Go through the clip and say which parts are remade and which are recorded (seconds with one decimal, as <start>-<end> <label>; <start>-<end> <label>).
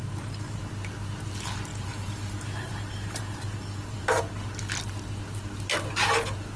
0.0-0.6 remade; 0.6-1.7 recorded; 1.7-4.2 remade; 4.2-6.6 recorded